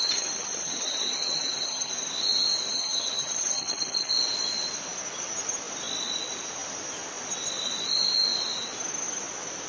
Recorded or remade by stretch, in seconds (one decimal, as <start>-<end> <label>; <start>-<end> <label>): 0.0-1.9 remade; 1.9-2.7 recorded; 2.7-4.1 remade; 4.1-9.7 recorded